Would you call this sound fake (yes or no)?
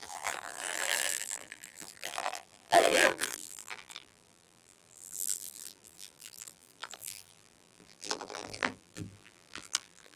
yes